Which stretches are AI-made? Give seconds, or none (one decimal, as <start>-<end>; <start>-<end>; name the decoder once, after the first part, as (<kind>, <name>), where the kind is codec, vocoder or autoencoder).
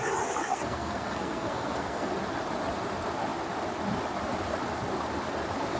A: 0.5-2.1 (codec, SNAC)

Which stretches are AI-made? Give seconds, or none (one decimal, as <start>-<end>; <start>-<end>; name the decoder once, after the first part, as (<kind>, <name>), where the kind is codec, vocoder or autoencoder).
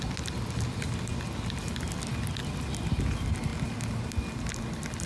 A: none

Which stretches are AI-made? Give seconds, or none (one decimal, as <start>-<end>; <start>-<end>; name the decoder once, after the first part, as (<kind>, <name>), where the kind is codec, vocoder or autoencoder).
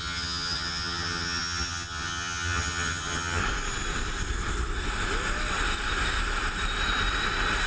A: 0.0-3.4 (vocoder, HiFi-GAN)